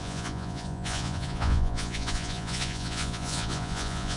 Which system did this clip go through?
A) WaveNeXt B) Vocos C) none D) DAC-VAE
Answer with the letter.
B